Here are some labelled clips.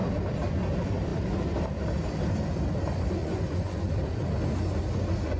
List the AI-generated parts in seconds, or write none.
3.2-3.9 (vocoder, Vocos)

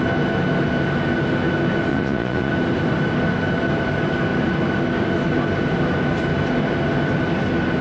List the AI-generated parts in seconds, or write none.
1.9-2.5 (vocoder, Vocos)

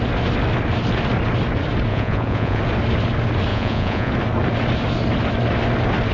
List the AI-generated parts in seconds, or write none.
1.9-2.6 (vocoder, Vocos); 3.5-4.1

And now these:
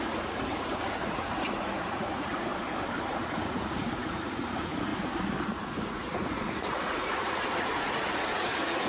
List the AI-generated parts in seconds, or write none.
0.0-2.5 (vocoder, Vocos); 3.0-4.9; 5.4-8.9

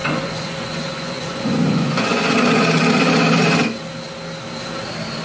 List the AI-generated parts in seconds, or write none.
0.0-2.3 (vocoder, Vocos)

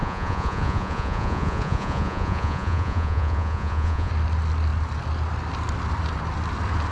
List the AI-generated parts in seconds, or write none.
0.0-4.1 (vocoder, Vocos)

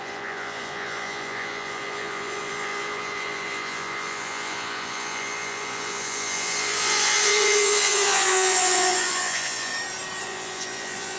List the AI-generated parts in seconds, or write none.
0.0-9.7 (vocoder, Vocos); 10.2-11.2

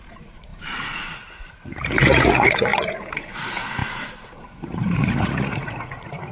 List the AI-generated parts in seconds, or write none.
0.0-6.3 (vocoder, Vocos)